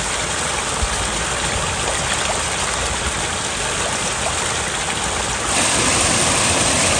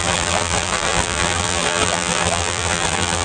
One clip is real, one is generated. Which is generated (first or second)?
second